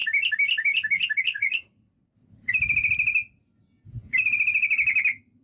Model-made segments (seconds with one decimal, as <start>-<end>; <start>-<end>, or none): 1.2-2.0